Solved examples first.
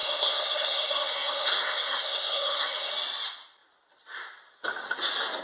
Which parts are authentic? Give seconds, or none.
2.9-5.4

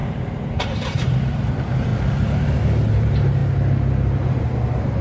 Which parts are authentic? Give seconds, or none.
1.9-2.9; 3.4-4.3

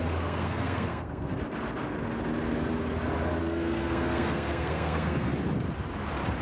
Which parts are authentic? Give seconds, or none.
1.4-3.4; 5.3-6.4

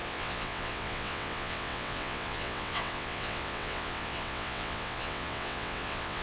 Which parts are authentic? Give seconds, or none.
none

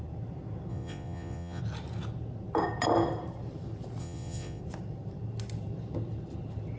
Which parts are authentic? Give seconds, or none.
0.0-0.7; 1.6-4.0; 4.6-6.8

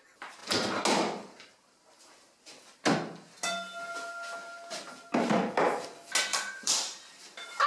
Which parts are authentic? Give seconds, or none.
0.0-6.3

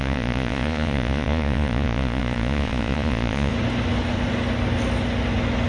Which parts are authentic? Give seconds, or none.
3.5-5.7